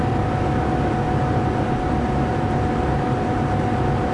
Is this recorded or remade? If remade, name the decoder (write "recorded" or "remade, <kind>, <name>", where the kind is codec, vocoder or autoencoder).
recorded